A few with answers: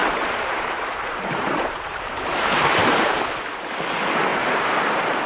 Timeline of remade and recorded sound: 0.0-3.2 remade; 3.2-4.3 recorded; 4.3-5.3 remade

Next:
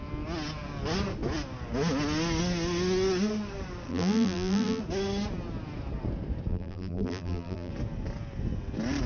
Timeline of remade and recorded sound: 0.0-3.9 recorded; 3.9-4.8 remade; 4.8-6.5 recorded; 6.5-7.7 remade; 7.7-9.1 recorded

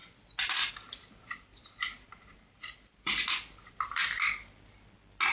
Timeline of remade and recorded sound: 0.0-1.5 recorded; 1.5-4.3 remade; 4.3-5.3 recorded

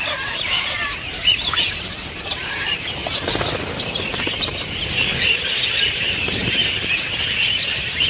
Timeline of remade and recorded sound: 0.0-3.0 remade; 3.0-3.8 recorded; 3.8-8.1 remade

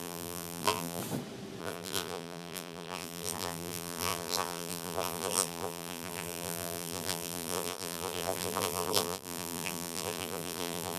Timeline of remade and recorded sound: 0.0-1.0 remade; 1.0-1.6 recorded; 1.6-11.0 remade